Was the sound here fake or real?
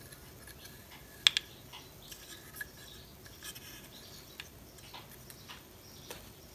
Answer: real